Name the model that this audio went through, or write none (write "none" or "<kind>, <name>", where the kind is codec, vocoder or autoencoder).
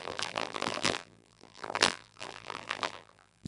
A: vocoder, BigVGAN v2